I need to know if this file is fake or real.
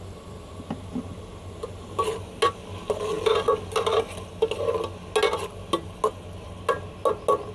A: real